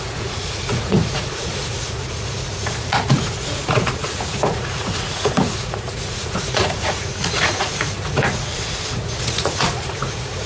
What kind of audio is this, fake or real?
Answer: fake